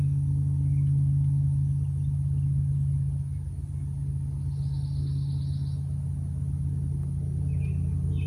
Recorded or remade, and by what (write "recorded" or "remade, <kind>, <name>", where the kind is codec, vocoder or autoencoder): recorded